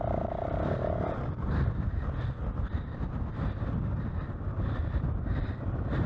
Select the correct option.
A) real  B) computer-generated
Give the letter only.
A